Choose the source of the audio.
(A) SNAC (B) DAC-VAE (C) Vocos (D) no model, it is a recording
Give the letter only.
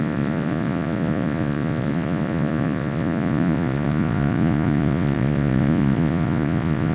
C